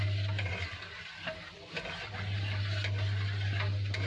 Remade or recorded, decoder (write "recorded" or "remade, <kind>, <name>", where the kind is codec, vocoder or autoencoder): recorded